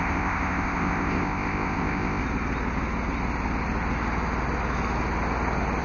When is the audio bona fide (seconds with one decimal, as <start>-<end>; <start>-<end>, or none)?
2.2-5.8